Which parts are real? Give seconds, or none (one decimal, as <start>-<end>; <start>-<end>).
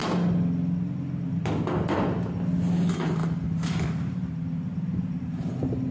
0.0-5.9